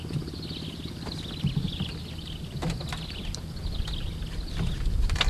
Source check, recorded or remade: recorded